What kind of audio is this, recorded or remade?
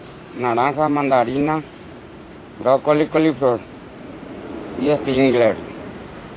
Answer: remade